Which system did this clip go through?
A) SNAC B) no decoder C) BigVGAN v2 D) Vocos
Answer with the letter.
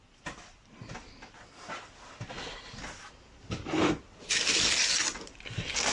B